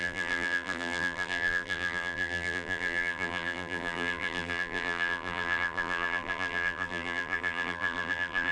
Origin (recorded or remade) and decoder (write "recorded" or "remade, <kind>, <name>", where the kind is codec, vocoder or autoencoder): remade, vocoder, BigVGAN v2